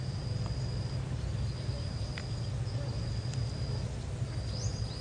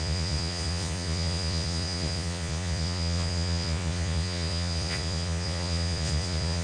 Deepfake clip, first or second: second